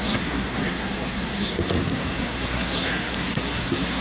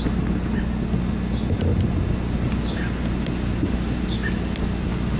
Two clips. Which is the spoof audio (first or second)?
first